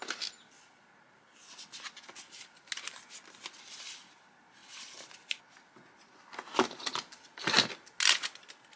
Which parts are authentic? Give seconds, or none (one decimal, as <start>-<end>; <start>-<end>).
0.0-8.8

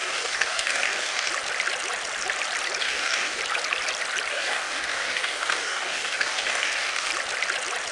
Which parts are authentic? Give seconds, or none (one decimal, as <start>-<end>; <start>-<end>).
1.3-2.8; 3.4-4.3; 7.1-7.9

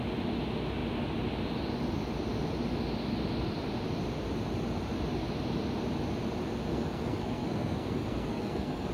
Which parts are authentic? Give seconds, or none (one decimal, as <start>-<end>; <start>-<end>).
0.0-6.7

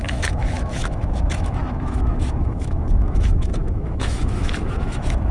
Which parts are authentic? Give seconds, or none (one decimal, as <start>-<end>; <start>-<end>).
none